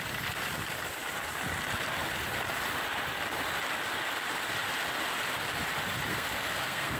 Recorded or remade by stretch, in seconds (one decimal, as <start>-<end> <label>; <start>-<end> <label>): 0.0-6.1 recorded; 6.1-7.0 remade